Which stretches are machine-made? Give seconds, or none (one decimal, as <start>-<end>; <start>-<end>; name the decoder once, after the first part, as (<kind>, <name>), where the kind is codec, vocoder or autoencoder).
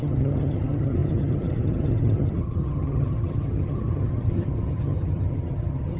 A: 0.0-6.0 (vocoder, HiFi-GAN)